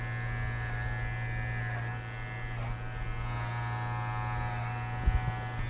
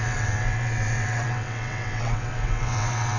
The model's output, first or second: second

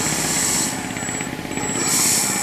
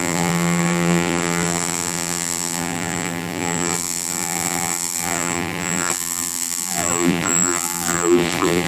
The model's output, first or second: second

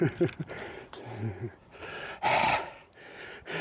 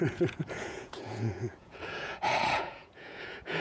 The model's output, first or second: second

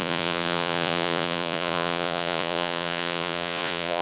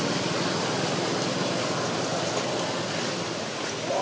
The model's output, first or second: first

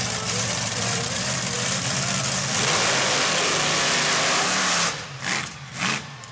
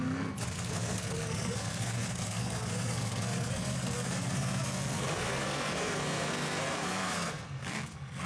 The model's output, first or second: second